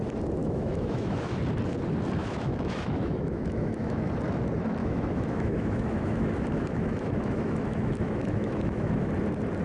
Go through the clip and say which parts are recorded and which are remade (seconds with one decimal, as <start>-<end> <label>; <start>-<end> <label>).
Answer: 0.0-0.4 recorded; 0.4-1.4 remade; 1.4-2.2 recorded; 2.2-4.1 remade; 4.1-4.8 recorded; 4.8-9.1 remade; 9.1-9.6 recorded